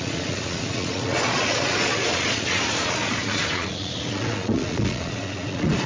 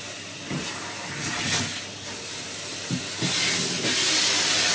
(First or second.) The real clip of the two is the second